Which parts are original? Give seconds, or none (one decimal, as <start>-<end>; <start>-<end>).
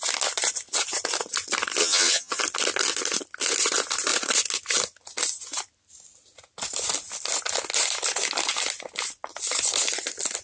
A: 0.0-1.8; 2.4-10.4